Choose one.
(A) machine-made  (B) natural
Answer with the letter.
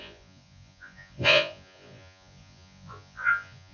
A